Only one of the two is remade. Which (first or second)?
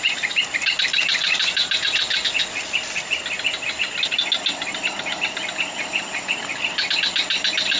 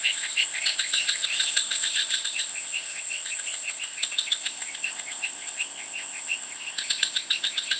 second